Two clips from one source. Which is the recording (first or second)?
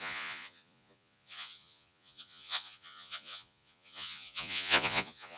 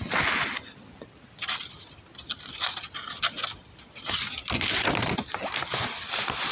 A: second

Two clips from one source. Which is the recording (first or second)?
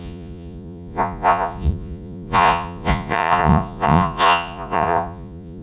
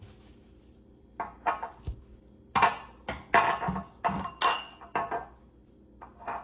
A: second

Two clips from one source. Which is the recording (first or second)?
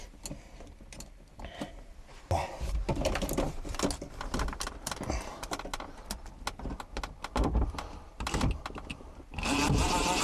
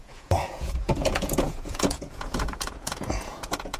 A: first